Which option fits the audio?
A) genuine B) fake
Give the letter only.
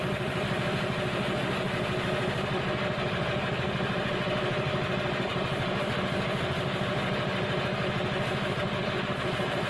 A